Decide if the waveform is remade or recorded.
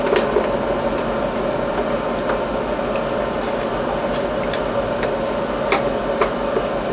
recorded